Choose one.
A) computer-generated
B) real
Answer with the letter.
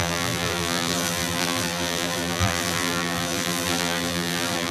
A